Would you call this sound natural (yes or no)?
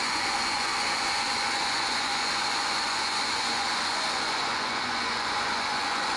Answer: no